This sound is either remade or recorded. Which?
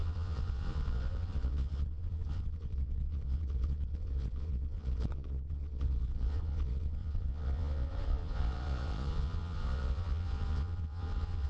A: remade